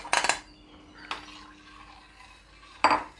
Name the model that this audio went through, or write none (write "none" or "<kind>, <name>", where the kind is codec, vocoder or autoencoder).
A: none